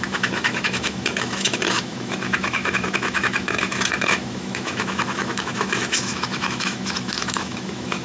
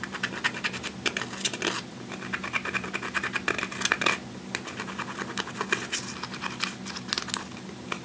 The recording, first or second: second